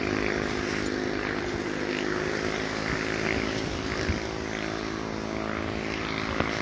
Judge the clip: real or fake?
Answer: real